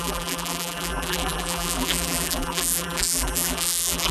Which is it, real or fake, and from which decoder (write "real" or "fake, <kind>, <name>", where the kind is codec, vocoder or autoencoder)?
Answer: fake, vocoder, BigVGAN v2